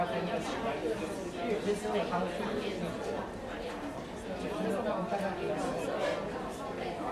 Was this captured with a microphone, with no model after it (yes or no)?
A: yes